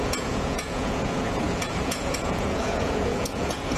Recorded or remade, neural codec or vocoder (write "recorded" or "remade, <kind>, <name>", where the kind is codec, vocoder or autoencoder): remade, vocoder, Vocos